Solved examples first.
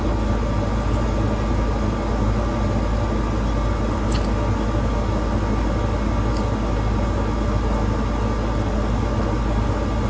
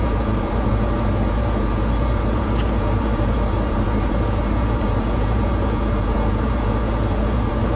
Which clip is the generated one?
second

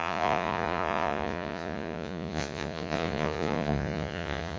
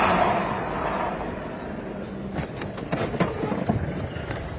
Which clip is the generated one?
first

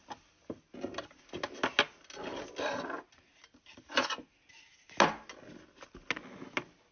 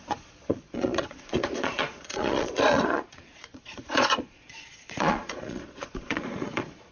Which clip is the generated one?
second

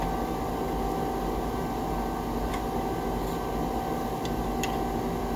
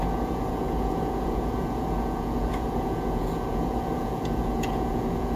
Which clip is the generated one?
second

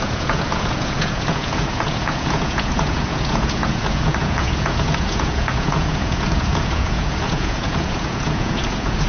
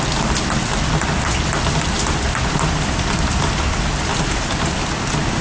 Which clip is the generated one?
first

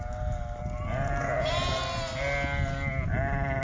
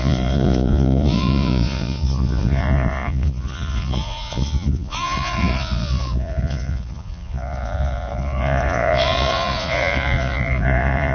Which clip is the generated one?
second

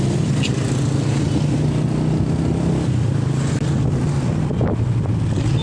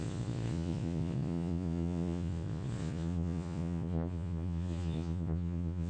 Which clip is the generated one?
second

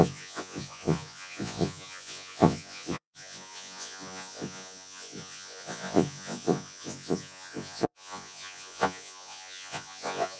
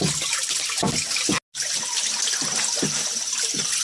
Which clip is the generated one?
first